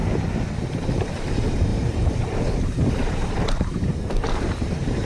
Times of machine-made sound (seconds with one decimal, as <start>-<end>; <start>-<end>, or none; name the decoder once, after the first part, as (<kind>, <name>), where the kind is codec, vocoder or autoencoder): 1.0-5.1 (vocoder, BigVGAN v2)